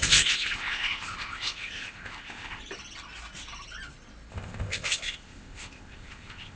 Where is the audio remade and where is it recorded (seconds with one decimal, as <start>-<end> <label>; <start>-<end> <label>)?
0.0-2.6 remade; 2.6-4.3 recorded; 4.3-6.6 remade